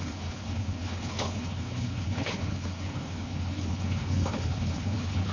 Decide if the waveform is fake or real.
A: fake